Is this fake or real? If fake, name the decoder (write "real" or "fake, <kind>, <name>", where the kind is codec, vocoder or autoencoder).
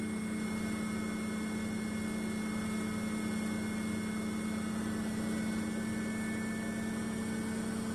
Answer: real